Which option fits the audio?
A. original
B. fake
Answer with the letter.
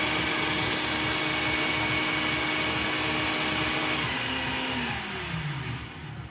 A